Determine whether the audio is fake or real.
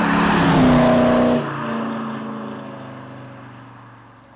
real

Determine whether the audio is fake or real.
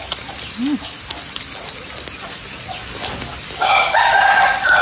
real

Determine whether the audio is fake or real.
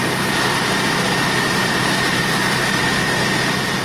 real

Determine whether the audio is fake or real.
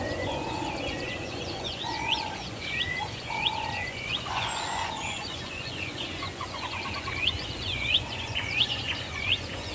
fake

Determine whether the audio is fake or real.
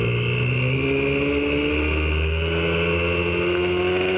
real